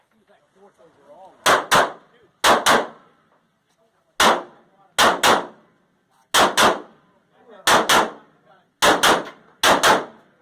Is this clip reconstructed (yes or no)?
no